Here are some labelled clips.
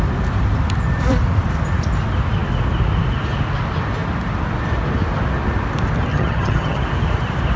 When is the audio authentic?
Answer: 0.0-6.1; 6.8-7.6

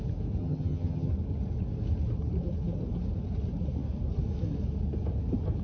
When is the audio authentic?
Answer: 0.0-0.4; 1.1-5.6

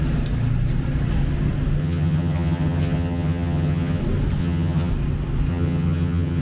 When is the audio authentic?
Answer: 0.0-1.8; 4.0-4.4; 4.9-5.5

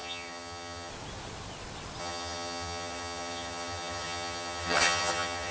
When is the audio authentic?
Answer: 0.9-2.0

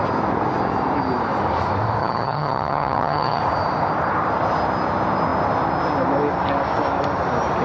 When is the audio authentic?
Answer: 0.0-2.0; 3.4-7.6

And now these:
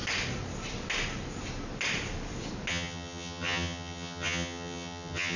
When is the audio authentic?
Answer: 0.0-2.7

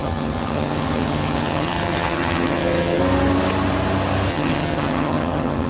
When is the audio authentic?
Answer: 3.0-4.3